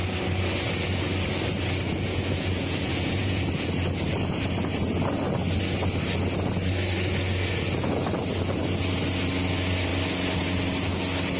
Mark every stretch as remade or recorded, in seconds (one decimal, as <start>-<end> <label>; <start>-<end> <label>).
0.0-2.1 recorded; 2.1-3.4 remade; 3.4-11.4 recorded